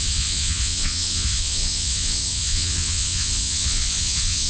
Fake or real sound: fake